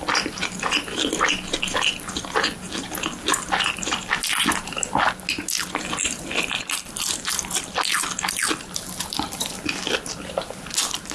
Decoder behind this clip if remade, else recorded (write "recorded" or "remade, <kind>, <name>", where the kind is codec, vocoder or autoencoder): recorded